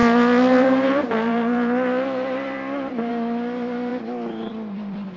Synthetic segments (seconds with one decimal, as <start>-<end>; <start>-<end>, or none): 0.0-3.1; 3.9-5.2